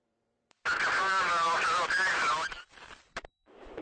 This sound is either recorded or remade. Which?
remade